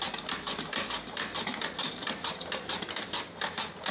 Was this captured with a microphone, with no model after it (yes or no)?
yes